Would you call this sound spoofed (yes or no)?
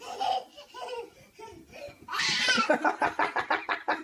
no